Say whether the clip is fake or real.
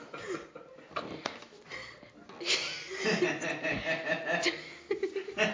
real